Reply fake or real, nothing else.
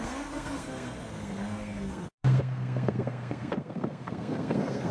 fake